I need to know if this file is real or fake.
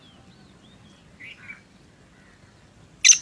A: real